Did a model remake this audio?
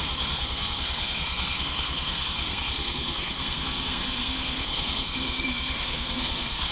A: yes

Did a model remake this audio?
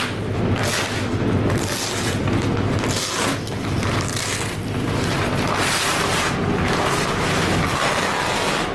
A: no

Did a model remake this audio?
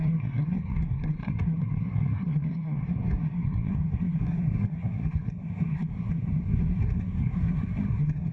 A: yes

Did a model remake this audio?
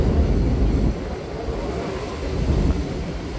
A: no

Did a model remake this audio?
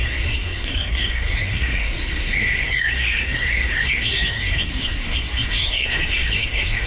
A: yes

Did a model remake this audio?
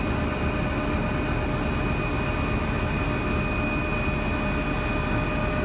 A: no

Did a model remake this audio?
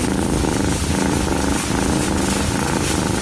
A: no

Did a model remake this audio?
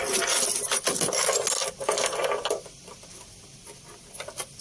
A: no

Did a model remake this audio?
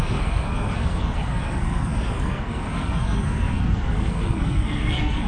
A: yes